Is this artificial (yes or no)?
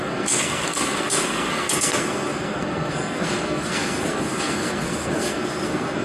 yes